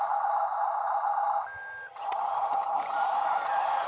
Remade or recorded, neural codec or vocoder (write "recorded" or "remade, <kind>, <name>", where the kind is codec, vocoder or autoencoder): recorded